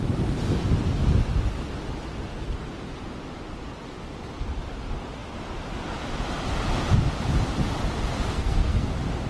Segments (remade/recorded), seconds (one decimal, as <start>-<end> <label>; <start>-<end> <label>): 0.0-8.3 recorded; 8.3-8.9 remade; 8.9-9.3 recorded